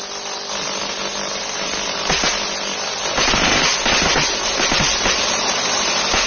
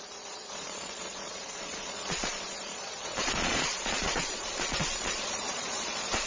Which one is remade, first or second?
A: second